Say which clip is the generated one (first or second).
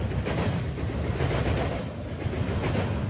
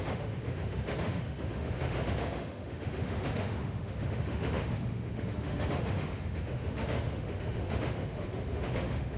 second